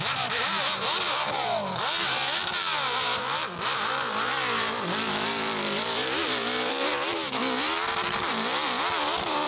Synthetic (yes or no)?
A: yes